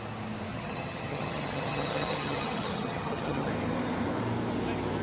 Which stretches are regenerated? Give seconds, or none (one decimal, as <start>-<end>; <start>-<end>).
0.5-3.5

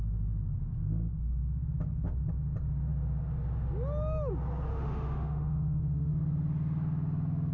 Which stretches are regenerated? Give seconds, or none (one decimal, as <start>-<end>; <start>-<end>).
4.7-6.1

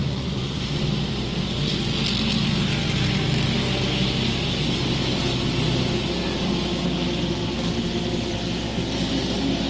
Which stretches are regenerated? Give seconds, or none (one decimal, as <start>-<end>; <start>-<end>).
0.0-0.8

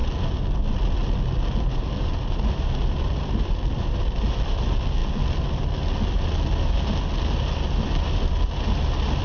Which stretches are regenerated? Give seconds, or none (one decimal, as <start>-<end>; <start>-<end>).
none